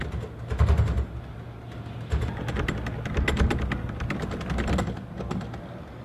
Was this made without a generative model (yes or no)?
yes